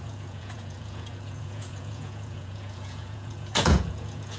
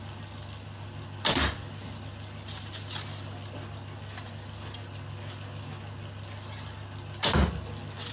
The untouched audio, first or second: second